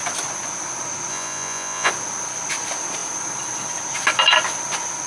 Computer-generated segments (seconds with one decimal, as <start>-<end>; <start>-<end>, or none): 1.1-1.9